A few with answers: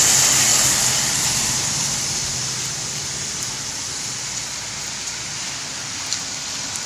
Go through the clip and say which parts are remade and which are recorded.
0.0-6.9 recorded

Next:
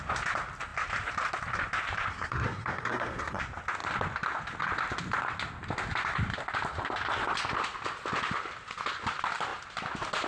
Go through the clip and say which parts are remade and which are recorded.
0.0-2.1 recorded; 2.1-3.4 remade; 3.4-10.3 recorded

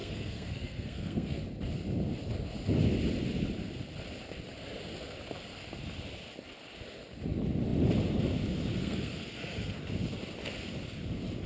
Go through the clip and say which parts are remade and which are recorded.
0.0-1.4 remade; 1.4-8.8 recorded; 8.8-9.8 remade; 9.8-11.5 recorded